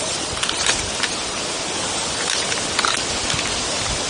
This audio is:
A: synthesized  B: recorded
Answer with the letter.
B